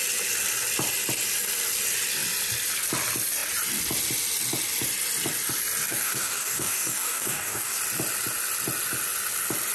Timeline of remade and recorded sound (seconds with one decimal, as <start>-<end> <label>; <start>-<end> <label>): 0.0-5.9 recorded; 5.9-7.8 remade; 7.8-9.7 recorded